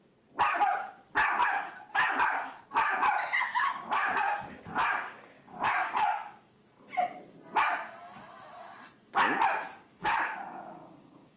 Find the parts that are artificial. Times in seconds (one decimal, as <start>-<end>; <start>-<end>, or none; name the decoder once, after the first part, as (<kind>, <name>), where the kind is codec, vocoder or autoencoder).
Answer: 3.5-6.6 (codec, DAC); 9.7-11.4